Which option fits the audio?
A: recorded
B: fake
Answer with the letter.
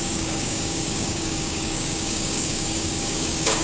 B